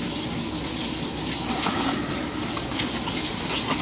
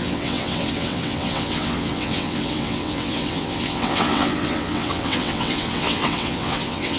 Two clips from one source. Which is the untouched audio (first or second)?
first